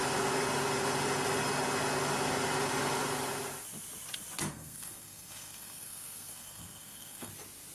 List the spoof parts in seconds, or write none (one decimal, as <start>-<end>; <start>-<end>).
4.5-7.3